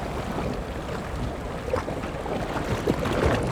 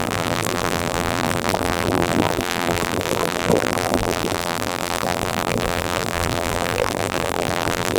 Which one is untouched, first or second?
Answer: first